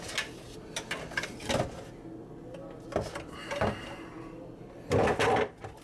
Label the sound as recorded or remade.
recorded